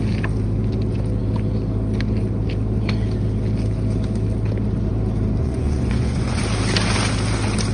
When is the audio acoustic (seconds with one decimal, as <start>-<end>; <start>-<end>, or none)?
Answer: 0.0-5.4; 6.4-7.7